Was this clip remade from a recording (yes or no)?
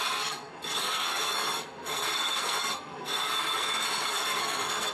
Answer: yes